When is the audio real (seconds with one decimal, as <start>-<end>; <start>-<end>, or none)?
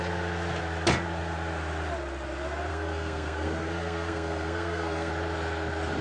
0.0-2.7; 5.1-6.0